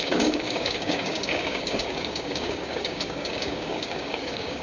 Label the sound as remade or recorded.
remade